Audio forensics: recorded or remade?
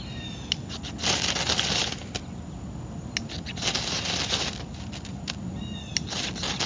recorded